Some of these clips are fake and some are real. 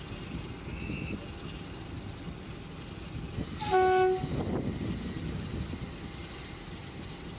real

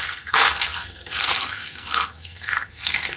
fake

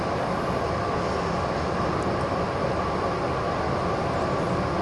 real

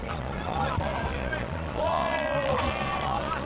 fake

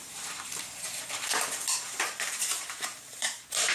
fake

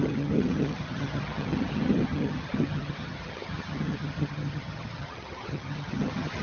fake